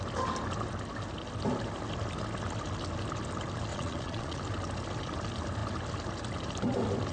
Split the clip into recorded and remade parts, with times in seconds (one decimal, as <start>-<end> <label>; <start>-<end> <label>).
0.0-3.7 recorded; 3.7-4.4 remade; 4.4-7.1 recorded